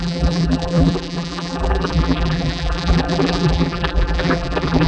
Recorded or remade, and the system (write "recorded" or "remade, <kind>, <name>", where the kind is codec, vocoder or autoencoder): remade, vocoder, BigVGAN v2